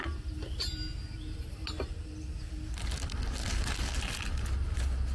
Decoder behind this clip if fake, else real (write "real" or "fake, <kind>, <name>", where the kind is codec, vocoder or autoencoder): real